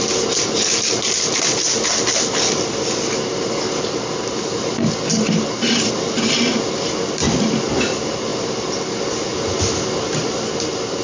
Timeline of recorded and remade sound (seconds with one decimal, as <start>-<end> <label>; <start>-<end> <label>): 0.0-11.0 recorded